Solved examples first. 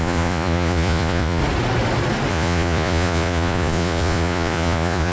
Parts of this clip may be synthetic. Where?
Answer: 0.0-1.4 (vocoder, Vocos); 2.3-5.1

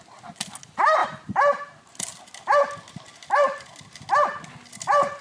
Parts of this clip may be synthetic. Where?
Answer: none

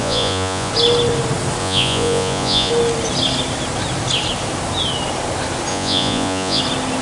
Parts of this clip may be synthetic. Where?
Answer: 0.0-0.7 (vocoder, Vocos); 1.6-2.7; 5.7-6.6

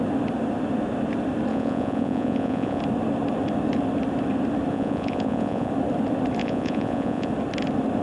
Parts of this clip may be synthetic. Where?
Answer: 1.5-2.8 (vocoder, Vocos); 4.7-5.7; 6.4-7.3

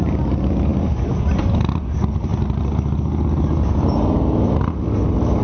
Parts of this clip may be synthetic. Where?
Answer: none